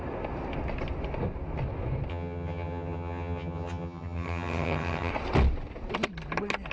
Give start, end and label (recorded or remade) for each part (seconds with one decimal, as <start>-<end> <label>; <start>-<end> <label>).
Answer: 0.0-2.1 recorded; 2.1-5.1 remade; 5.1-6.7 recorded